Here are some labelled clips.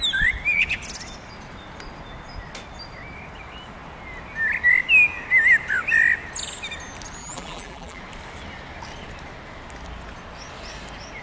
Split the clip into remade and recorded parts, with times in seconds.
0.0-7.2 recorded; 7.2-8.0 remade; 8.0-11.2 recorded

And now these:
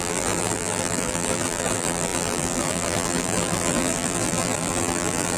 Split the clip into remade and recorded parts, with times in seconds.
0.0-5.4 remade

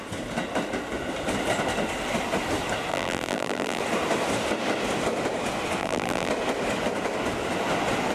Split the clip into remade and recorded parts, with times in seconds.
0.0-2.9 recorded; 2.9-3.8 remade; 3.8-5.8 recorded; 5.8-6.3 remade; 6.3-8.1 recorded

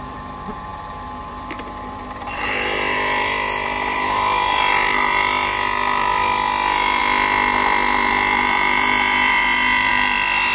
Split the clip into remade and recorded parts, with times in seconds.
0.0-0.7 remade; 0.7-1.2 recorded; 1.2-10.5 remade

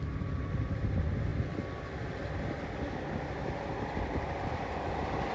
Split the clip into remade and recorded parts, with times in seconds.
0.0-1.3 remade; 1.3-3.1 recorded; 3.1-5.3 remade